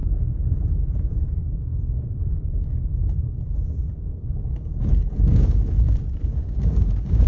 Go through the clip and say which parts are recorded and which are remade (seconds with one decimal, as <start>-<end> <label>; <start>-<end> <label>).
0.0-0.8 recorded; 0.8-7.3 remade

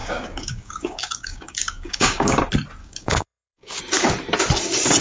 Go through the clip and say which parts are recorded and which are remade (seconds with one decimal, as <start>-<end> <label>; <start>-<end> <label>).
0.0-2.4 remade; 2.4-2.8 recorded; 2.8-3.8 remade; 3.8-5.0 recorded

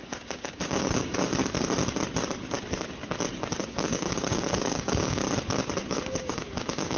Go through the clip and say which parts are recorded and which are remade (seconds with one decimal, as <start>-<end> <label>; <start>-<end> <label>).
0.0-1.3 remade; 1.3-3.6 recorded; 3.6-5.2 remade; 5.2-5.9 recorded; 5.9-7.0 remade

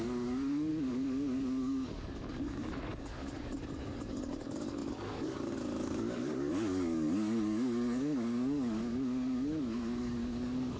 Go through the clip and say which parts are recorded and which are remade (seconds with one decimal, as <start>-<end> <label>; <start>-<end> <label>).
0.0-10.8 remade

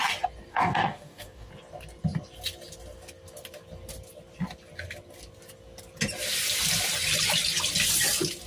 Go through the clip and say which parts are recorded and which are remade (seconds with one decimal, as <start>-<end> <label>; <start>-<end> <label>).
0.0-0.5 recorded; 0.5-1.5 remade; 1.5-8.5 recorded